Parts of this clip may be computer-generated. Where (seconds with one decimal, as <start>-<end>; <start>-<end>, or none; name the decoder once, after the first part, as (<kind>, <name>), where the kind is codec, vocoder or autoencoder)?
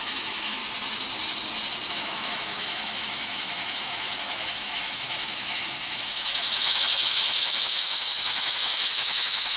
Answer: 0.0-0.6 (autoencoder, DAC-VAE); 1.9-9.6